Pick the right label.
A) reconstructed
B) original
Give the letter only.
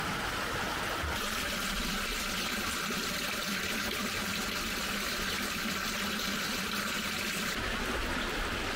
B